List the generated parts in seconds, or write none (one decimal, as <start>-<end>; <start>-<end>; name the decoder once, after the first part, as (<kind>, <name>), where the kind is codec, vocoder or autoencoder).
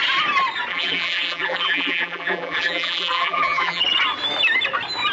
0.7-3.8 (vocoder, BigVGAN v2)